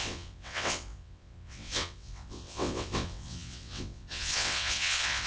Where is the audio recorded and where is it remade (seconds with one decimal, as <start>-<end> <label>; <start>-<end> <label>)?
0.0-5.3 remade